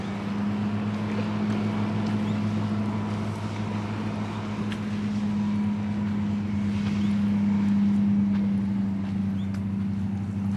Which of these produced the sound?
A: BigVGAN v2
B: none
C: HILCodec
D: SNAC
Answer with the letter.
B